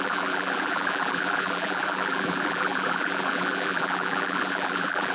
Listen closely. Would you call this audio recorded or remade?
remade